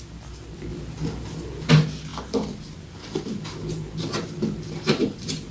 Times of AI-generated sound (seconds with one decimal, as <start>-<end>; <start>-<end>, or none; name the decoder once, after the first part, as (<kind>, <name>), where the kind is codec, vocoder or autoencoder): 2.1-5.5 (vocoder, BigVGAN v2)

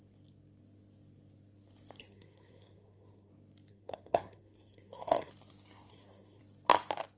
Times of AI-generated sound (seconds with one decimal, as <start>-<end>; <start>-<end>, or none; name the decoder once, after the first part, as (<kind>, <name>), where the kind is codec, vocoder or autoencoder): 2.0-3.3 (codec, SNAC); 3.7-5.3; 5.9-6.4

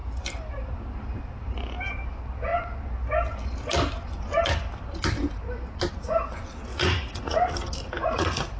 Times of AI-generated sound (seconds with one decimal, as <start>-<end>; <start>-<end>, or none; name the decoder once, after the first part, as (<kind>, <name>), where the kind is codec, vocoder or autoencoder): 6.7-7.5 (vocoder, Vocos); 8.0-8.6

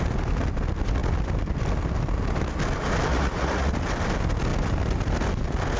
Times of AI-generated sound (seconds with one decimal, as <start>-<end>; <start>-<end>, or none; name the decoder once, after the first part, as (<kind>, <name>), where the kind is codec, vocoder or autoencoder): 3.1-3.7 (vocoder, Vocos)

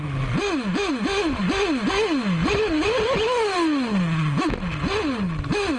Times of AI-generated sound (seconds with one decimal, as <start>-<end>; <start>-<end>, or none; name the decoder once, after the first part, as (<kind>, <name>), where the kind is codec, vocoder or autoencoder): none

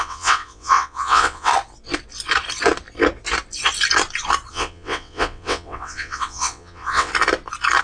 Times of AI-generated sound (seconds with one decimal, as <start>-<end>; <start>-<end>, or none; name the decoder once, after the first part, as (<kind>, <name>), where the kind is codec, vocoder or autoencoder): 0.0-1.5 (vocoder, WaveNeXt); 4.5-7.1

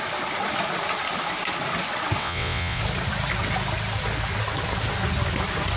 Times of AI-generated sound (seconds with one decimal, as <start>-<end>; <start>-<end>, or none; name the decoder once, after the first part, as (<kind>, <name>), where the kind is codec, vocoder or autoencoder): 2.2-2.8 (vocoder, WaveNeXt)

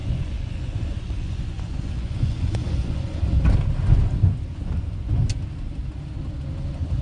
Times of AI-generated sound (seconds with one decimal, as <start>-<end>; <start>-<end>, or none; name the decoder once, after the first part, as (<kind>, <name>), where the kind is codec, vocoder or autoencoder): 0.0-3.2 (vocoder, Vocos); 4.5-5.3